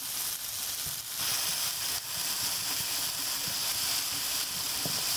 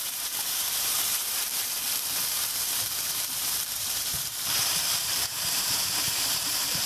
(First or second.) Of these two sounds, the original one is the first